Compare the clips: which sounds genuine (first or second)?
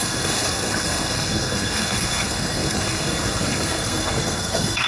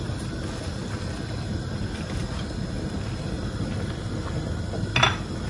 second